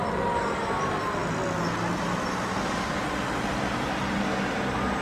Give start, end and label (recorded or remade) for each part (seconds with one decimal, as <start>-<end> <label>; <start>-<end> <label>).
0.0-5.0 recorded